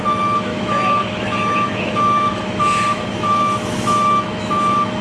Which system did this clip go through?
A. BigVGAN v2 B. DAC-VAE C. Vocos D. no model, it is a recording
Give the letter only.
B